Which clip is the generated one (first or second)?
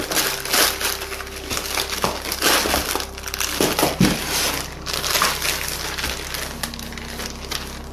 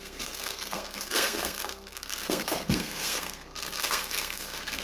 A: second